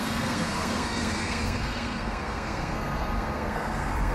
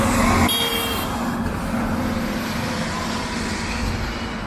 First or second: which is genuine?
second